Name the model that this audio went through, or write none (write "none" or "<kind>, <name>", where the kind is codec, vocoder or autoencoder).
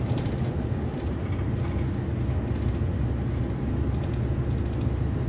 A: none